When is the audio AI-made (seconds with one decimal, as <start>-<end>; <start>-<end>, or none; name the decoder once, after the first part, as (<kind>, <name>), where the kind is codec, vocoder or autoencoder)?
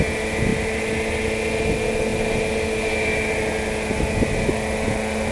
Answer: none